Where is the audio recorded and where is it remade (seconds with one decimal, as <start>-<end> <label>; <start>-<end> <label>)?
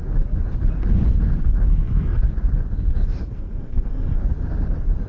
0.0-1.7 recorded; 1.7-2.2 remade; 2.2-3.3 recorded; 3.3-4.2 remade; 4.2-5.1 recorded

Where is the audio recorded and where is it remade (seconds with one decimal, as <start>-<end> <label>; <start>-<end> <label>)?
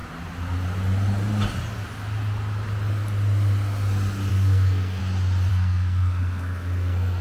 0.0-4.3 recorded; 4.3-5.0 remade; 5.0-5.5 recorded; 5.5-7.2 remade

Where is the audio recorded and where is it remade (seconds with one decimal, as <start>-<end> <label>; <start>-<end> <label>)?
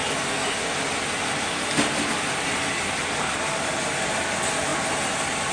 0.0-5.5 recorded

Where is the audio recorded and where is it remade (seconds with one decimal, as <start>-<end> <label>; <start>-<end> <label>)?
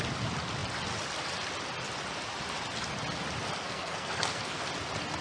0.0-3.6 recorded; 3.6-4.6 remade; 4.6-5.2 recorded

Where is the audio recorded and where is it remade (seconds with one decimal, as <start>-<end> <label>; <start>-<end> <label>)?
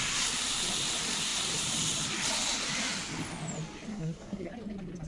0.0-3.9 recorded; 3.9-4.5 remade; 4.5-5.1 recorded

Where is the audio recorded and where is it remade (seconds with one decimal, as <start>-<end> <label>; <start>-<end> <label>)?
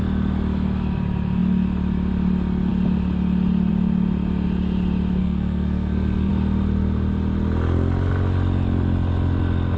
0.0-5.2 recorded; 5.2-6.3 remade; 6.3-9.8 recorded